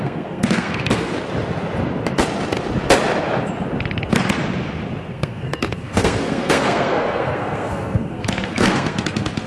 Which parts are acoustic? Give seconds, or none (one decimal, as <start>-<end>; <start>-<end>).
1.1-5.1